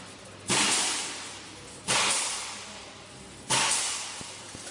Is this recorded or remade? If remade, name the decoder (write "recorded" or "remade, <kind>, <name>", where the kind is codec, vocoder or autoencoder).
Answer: recorded